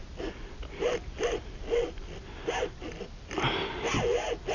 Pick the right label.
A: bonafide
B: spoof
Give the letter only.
A